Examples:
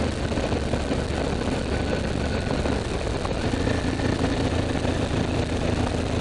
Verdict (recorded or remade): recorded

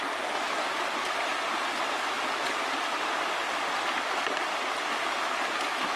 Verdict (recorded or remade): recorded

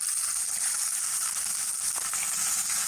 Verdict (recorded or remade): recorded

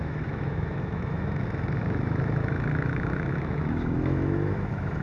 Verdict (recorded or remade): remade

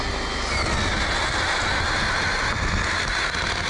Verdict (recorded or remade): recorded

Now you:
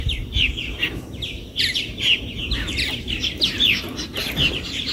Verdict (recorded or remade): remade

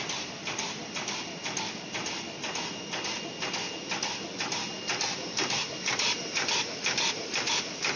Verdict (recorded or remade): recorded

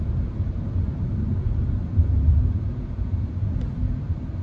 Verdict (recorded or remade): recorded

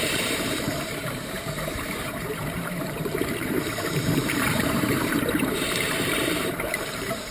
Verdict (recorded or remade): remade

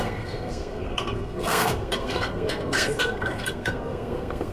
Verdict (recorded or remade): remade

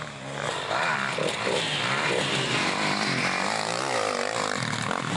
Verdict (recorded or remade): recorded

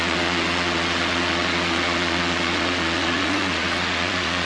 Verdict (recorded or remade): remade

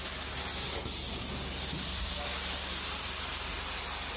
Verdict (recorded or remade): recorded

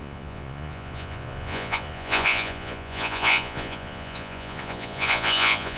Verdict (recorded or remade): remade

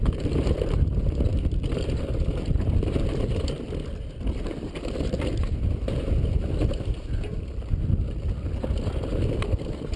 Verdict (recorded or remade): recorded